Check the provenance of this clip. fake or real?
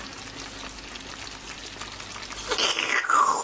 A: real